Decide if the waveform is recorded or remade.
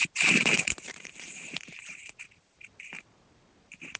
remade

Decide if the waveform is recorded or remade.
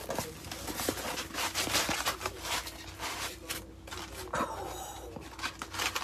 recorded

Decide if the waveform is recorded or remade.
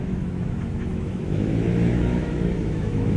remade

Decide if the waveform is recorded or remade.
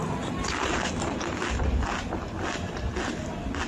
recorded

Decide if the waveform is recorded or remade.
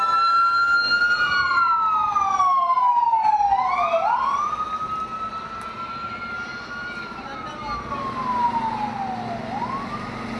recorded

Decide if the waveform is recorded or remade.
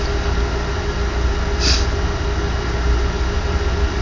recorded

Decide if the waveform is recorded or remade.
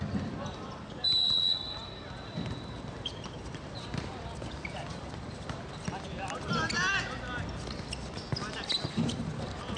remade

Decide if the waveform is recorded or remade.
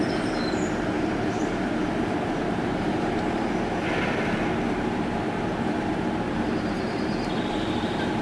remade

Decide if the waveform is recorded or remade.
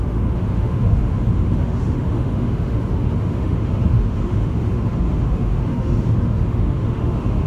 remade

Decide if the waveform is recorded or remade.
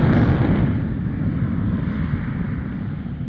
remade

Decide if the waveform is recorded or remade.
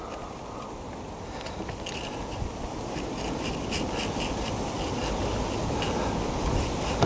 recorded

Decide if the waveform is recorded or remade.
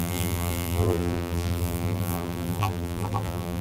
remade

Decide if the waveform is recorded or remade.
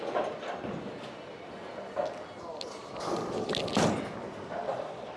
recorded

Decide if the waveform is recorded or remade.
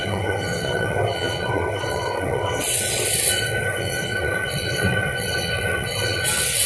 remade